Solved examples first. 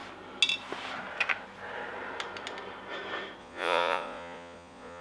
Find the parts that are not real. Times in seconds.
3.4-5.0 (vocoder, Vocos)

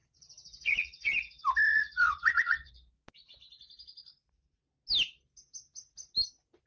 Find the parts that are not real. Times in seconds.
0.0-1.1 (vocoder, Vocos); 1.7-2.7

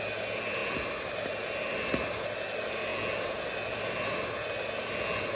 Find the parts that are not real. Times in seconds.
none

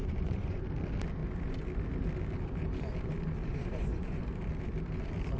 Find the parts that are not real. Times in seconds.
0.0-0.6 (vocoder, Vocos); 3.5-4.2

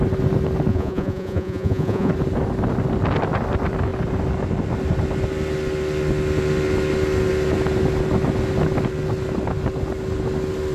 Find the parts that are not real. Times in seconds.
0.7-2.1 (vocoder, Vocos)

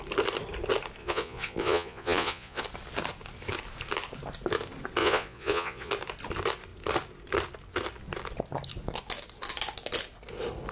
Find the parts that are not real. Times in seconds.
1.0-2.6 (vocoder, Vocos); 5.0-5.9

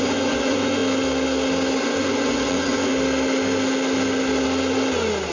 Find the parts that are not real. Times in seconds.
0.0-0.8 (vocoder, Vocos); 1.8-2.9

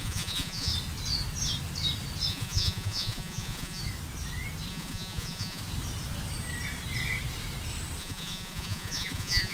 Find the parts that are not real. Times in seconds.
0.0-0.7 (vocoder, Vocos); 2.3-3.8; 4.7-5.6; 8.0-9.5